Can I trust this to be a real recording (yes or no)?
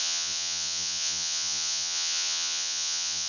no